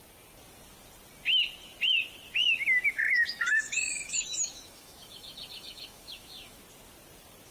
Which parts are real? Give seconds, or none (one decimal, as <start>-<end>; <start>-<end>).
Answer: 0.0-2.4; 6.6-7.5